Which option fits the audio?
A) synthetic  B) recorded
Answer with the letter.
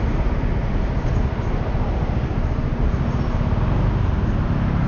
B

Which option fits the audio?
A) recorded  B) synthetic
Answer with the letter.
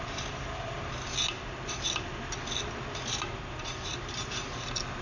A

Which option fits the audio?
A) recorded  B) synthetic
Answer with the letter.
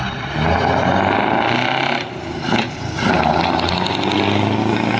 A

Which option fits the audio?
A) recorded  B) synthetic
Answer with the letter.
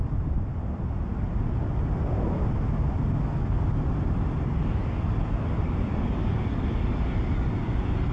A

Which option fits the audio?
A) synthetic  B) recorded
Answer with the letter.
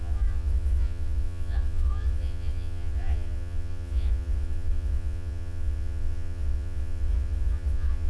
A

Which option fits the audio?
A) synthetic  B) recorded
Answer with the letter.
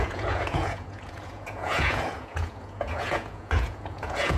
A